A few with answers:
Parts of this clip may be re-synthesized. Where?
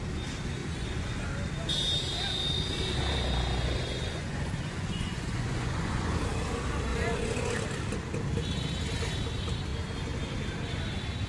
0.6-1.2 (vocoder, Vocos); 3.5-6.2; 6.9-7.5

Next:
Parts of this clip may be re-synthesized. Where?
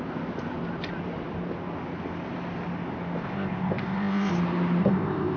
3.2-4.3 (codec, ZipCodec); 4.8-5.4